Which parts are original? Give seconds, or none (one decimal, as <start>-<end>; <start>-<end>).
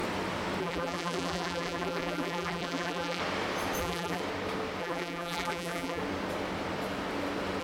0.0-0.6; 3.2-3.8; 4.2-4.8; 6.0-7.6